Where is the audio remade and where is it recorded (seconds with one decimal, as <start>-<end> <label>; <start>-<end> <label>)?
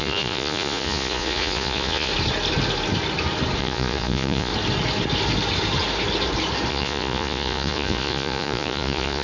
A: 0.0-2.1 remade; 2.1-3.6 recorded; 3.6-4.5 remade; 4.5-6.7 recorded; 6.7-9.2 remade